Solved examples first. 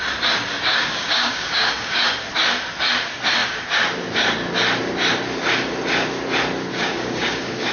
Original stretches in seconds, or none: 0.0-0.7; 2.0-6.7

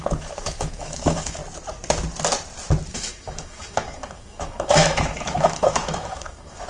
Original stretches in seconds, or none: 1.4-2.9

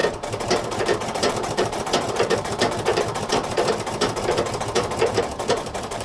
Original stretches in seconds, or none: none

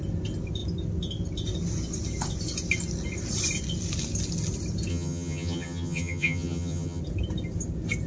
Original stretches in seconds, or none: 0.0-4.9; 7.0-8.1

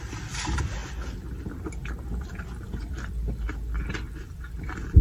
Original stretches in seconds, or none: 0.0-5.0

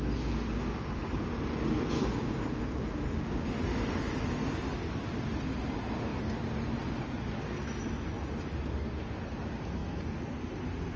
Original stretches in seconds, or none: 0.0-11.0

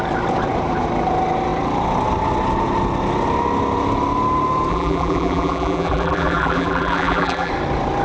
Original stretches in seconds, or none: 0.0-4.7; 7.5-8.0